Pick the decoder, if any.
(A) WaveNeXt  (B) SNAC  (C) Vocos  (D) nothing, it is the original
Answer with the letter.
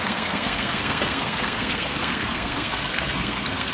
B